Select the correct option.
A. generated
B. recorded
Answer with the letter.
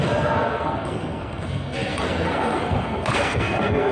A